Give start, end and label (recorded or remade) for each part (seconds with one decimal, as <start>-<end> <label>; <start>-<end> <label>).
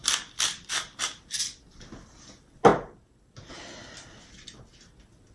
0.0-0.7 remade; 0.7-5.3 recorded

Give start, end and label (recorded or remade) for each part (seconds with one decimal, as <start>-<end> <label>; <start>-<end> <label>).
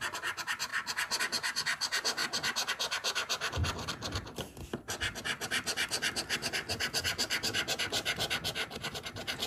0.0-0.7 remade; 0.7-1.2 recorded; 1.2-2.2 remade; 2.2-2.7 recorded; 2.7-3.6 remade; 3.6-7.0 recorded; 7.0-9.5 remade